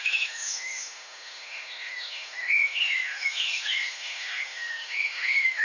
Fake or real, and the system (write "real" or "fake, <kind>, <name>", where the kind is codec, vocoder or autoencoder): fake, autoencoder, DAC-VAE